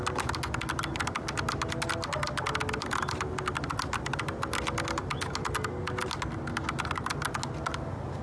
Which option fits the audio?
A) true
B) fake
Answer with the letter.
A